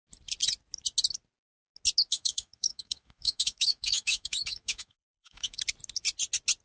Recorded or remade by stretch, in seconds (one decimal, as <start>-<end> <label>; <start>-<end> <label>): 0.0-2.1 recorded; 2.1-5.6 remade; 5.6-6.6 recorded

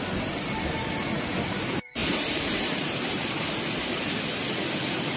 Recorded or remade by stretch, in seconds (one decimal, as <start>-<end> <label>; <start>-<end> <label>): 0.0-2.0 recorded; 2.0-3.6 remade; 3.6-5.2 recorded

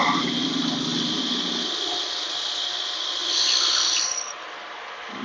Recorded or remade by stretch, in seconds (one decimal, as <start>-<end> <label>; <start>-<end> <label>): 0.0-5.2 recorded

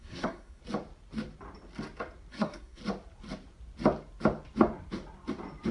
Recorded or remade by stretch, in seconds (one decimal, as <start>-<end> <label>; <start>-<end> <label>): 0.0-0.6 remade; 0.6-2.3 recorded; 2.3-2.8 remade; 2.8-5.7 recorded

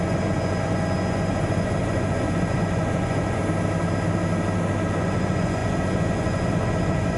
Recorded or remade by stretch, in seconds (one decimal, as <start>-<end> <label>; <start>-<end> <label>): 0.0-3.4 remade; 3.4-5.0 recorded; 5.0-7.2 remade

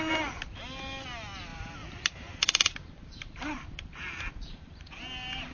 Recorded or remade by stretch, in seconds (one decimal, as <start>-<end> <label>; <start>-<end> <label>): 0.0-1.5 recorded; 1.5-4.8 remade; 4.8-5.5 recorded

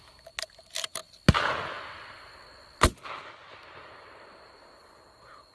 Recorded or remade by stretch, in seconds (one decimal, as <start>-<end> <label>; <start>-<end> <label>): 0.0-1.0 remade; 1.0-3.8 recorded; 3.8-5.5 remade